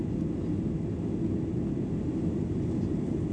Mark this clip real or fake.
real